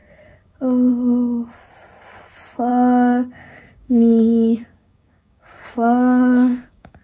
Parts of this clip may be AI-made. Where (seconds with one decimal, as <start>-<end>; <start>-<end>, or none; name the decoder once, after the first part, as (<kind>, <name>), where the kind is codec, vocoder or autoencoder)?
0.0-0.9 (codec, DAC); 2.7-7.0